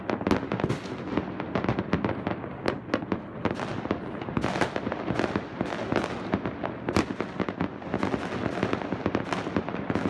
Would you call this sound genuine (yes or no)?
yes